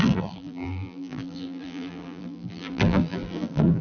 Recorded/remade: remade